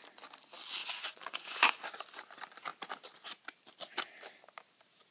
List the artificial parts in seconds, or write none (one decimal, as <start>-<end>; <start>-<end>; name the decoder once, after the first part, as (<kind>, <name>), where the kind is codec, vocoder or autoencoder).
0.8-1.8 (vocoder, Vocos)